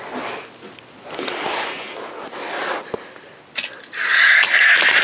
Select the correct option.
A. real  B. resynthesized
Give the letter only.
A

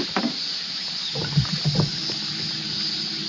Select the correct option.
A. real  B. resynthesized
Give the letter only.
A